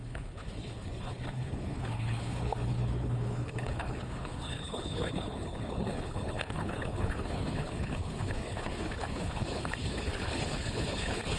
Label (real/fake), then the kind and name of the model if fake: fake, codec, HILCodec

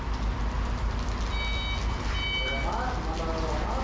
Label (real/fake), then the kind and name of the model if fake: real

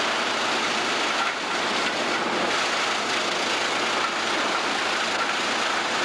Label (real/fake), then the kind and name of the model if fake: real